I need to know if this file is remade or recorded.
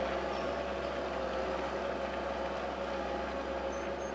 recorded